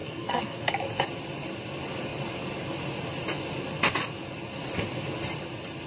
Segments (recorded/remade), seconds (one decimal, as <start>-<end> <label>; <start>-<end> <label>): 0.0-0.7 remade; 0.7-5.9 recorded